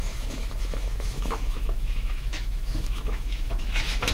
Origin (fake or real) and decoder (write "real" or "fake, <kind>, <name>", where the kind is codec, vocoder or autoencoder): fake, autoencoder, DAC-VAE